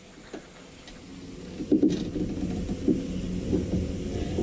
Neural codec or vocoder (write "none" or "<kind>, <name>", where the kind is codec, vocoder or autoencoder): none